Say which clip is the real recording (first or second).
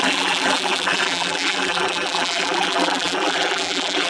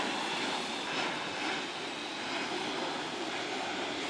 second